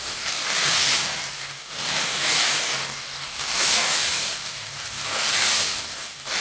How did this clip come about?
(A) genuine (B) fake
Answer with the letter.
B